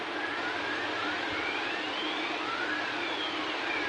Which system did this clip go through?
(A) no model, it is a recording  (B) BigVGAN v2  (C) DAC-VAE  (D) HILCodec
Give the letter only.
A